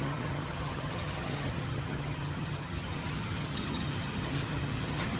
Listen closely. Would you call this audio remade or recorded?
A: remade